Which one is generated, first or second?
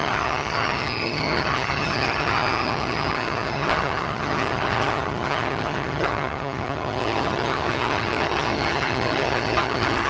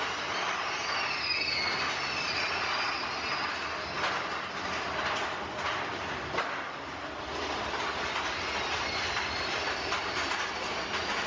first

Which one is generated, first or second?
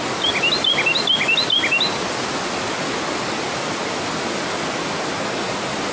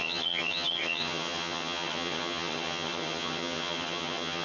second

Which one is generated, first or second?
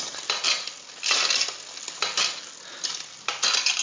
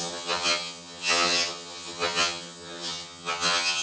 second